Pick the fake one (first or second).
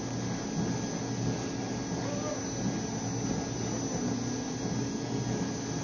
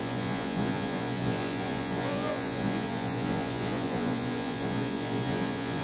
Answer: second